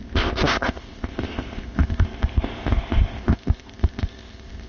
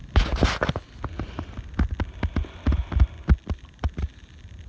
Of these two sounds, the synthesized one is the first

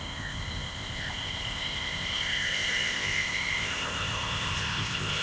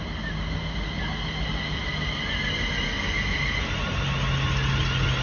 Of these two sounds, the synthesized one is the first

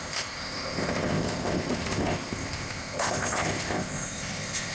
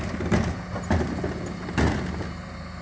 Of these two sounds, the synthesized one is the first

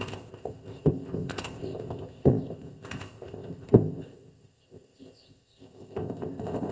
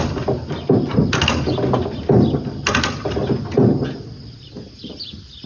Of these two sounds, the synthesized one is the first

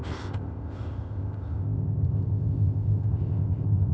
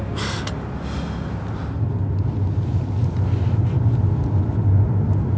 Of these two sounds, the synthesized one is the first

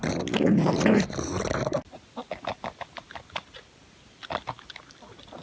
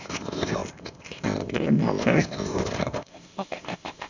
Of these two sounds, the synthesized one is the second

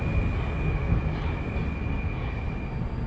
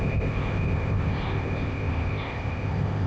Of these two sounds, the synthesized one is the second